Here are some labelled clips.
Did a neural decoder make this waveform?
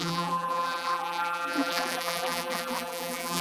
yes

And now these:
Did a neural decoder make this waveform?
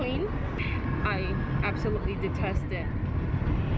no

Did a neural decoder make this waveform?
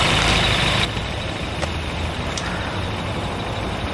no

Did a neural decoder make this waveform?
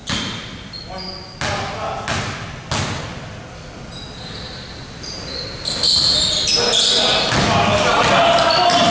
no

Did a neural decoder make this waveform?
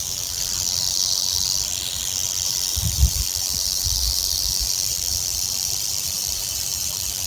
yes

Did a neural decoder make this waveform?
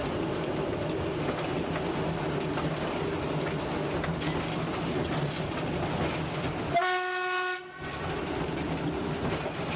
no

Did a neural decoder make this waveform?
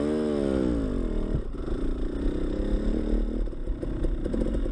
no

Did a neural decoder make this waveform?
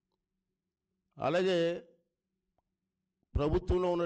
no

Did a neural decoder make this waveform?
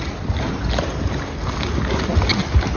no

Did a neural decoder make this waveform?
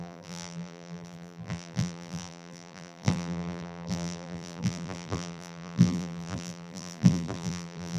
yes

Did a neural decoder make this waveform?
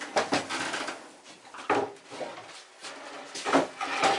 no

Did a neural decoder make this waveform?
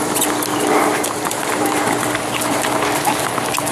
no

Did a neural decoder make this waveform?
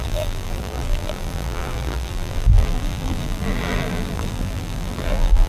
yes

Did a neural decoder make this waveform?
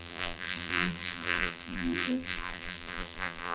yes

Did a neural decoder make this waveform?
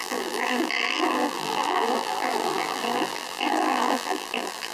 yes